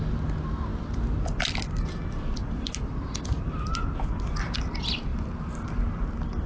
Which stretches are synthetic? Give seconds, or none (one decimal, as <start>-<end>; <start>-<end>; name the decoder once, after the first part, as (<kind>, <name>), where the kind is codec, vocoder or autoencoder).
none